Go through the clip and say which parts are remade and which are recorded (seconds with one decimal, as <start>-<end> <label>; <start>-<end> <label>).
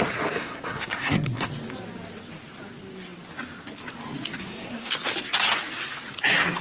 0.0-0.4 recorded; 0.4-1.5 remade; 1.5-4.4 recorded; 4.4-4.9 remade; 4.9-6.6 recorded